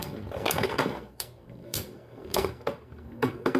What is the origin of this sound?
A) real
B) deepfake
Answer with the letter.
B